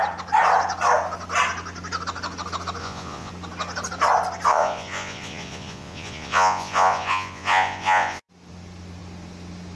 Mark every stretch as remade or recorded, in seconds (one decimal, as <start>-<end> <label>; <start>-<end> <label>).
0.0-2.8 recorded; 2.8-3.3 remade; 3.3-4.5 recorded; 4.5-8.3 remade; 8.3-9.8 recorded